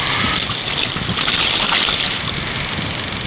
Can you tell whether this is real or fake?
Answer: real